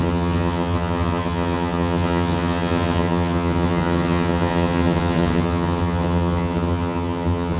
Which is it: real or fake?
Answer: fake